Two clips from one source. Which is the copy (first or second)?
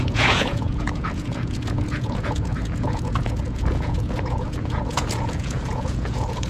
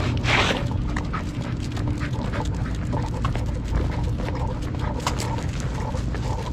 first